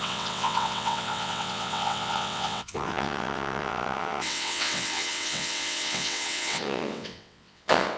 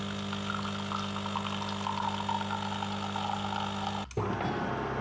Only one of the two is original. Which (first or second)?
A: second